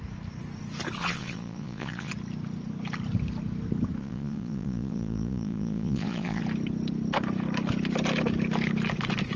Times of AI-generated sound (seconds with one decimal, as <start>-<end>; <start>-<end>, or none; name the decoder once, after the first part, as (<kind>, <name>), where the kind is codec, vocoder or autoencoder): 1.0-2.1 (vocoder, Vocos); 4.0-6.4